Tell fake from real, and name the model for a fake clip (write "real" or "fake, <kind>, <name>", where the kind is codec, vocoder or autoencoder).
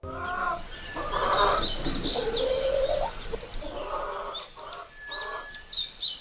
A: real